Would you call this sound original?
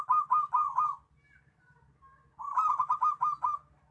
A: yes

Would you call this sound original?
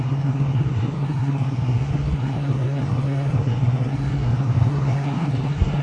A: no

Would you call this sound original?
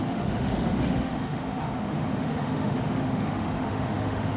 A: no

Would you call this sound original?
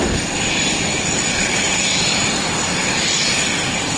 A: yes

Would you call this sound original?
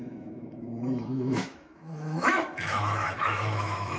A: no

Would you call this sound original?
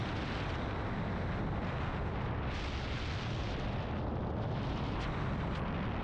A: yes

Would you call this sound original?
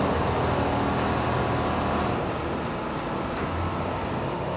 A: yes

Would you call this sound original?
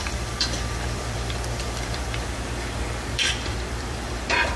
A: no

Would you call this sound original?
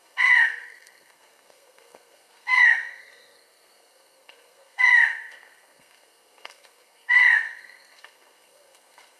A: no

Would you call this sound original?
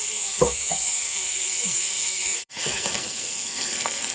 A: no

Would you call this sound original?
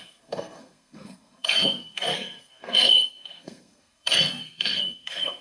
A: no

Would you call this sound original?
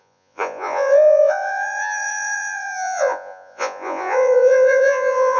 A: no